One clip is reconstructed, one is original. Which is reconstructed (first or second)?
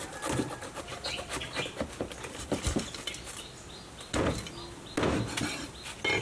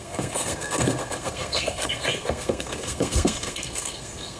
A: second